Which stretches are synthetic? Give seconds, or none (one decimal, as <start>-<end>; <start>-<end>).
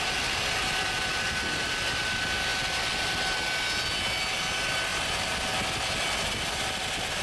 none